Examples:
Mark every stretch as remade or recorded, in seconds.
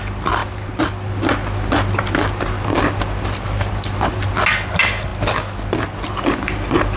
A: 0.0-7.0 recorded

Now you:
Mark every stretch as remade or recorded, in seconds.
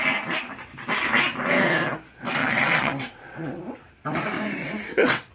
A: 0.0-2.4 recorded; 2.4-3.6 remade; 3.6-4.6 recorded; 4.6-5.3 remade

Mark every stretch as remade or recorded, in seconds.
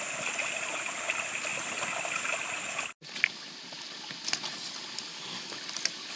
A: 0.0-5.1 recorded; 5.1-5.6 remade; 5.6-6.2 recorded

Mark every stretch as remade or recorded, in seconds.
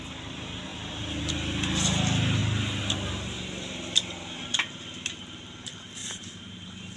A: 0.0-6.0 recorded; 6.0-7.0 remade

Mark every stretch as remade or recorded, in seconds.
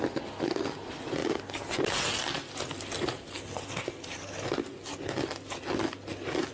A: 0.0-6.5 recorded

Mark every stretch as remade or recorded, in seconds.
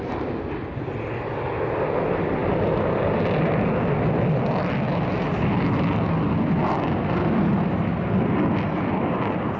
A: 0.0-9.6 recorded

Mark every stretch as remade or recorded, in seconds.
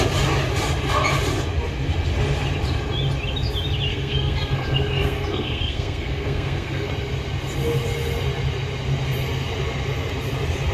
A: 0.0-3.9 recorded; 3.9-6.9 remade; 6.9-10.7 recorded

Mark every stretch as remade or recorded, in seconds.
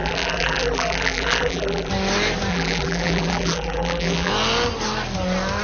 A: 0.0-1.9 remade; 1.9-2.5 recorded; 2.5-4.3 remade; 4.3-5.6 recorded